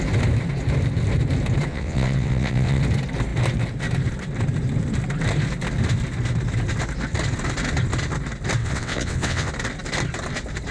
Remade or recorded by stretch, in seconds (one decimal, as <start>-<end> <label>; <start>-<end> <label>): 0.0-1.7 recorded; 1.7-2.8 remade; 2.8-8.6 recorded; 8.6-9.5 remade; 9.5-10.7 recorded